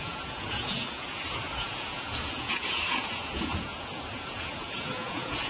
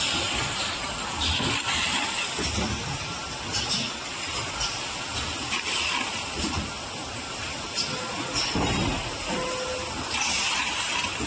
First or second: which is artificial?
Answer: first